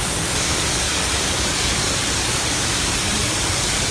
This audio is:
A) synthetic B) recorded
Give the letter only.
A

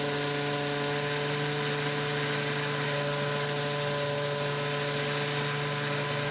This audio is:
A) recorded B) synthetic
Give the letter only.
A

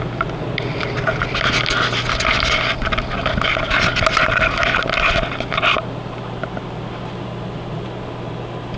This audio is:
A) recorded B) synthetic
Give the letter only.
A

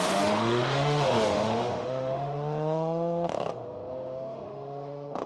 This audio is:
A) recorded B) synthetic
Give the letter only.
B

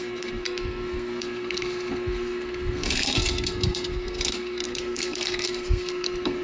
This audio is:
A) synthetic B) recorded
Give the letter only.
A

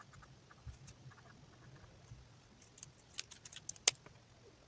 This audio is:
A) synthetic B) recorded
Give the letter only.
B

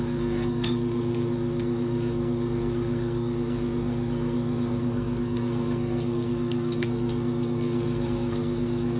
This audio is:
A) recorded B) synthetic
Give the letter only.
B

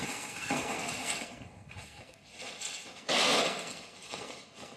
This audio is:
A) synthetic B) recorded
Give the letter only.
A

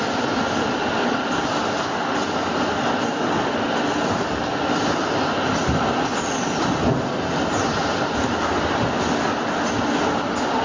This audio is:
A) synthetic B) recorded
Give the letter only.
B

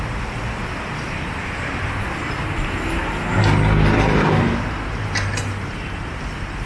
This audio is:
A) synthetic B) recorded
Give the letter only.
B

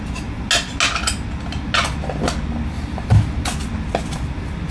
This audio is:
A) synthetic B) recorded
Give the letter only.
B